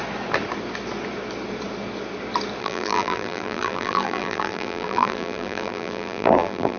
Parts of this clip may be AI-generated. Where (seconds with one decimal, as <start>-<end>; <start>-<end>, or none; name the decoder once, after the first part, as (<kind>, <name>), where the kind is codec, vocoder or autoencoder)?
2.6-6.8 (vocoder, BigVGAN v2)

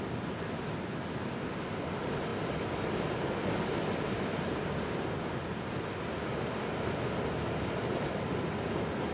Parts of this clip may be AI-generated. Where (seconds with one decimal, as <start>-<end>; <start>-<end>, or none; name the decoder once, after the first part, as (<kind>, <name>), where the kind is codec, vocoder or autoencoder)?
none

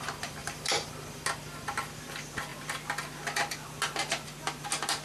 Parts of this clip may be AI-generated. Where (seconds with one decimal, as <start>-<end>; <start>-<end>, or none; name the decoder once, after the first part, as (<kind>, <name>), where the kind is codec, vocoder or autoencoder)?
0.4-0.9 (vocoder, BigVGAN v2)

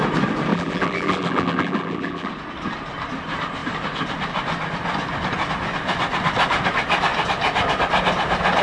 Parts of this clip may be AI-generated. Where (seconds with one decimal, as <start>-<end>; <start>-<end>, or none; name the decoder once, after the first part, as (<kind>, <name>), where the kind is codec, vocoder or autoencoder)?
0.5-2.3 (vocoder, BigVGAN v2)

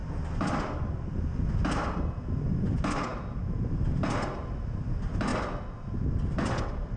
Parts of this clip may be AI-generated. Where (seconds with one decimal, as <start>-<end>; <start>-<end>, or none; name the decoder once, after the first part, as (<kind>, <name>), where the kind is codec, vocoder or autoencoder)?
none

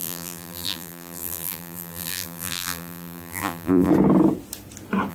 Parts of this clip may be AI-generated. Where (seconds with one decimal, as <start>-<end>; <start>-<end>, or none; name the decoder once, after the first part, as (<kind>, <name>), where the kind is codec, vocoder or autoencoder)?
0.0-3.9 (vocoder, BigVGAN v2)

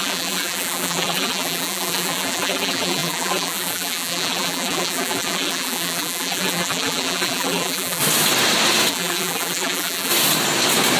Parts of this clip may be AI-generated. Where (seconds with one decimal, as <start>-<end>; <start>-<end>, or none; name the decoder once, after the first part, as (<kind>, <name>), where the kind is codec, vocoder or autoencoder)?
0.0-8.0 (vocoder, BigVGAN v2); 8.9-10.1